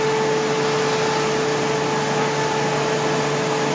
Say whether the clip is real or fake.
real